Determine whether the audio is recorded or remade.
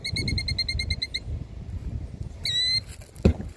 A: recorded